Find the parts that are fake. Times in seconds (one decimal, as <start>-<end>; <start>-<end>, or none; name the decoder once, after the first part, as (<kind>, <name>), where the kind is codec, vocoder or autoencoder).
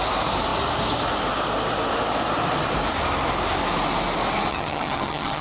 4.5-5.4 (vocoder, HiFi-GAN)